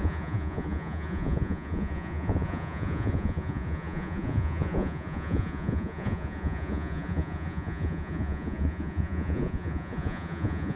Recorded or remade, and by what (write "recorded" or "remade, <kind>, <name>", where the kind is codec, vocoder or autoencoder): remade, vocoder, Vocos